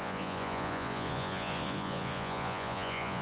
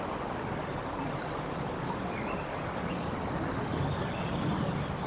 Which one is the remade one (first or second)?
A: first